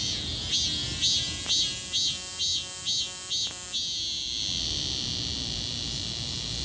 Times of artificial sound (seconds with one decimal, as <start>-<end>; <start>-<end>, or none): none